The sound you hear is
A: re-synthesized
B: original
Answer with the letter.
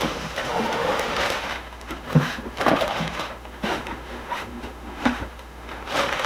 A